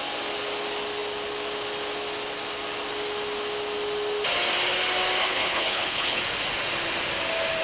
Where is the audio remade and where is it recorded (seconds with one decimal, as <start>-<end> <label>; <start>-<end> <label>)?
0.0-5.2 recorded; 5.2-6.2 remade; 6.2-7.6 recorded